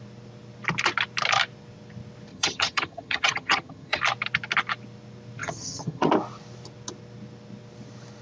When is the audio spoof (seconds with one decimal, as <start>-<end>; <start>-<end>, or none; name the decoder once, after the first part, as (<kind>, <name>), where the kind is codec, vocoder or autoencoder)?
2.3-4.0 (vocoder, HiFi-GAN); 5.4-6.1